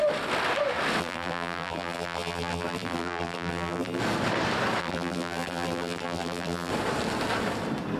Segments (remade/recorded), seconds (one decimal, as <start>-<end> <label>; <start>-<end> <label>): 0.0-1.0 recorded; 1.0-4.0 remade; 4.0-4.8 recorded; 4.8-6.7 remade; 6.7-8.0 recorded